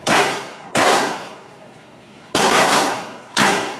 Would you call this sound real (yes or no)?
no